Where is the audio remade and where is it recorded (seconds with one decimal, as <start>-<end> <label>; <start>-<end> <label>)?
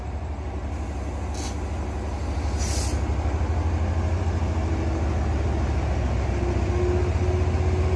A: 0.0-8.0 recorded